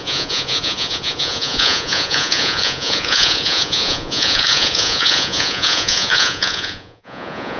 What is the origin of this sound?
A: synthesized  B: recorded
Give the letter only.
A